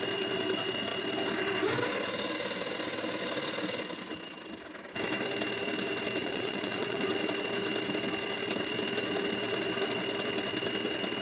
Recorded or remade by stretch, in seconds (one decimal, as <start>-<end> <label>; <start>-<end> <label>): 0.0-6.2 recorded; 6.2-7.1 remade; 7.1-11.2 recorded